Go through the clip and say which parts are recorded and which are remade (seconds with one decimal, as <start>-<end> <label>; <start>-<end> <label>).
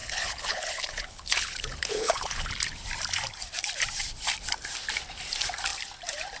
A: 0.0-2.5 remade; 2.5-6.4 recorded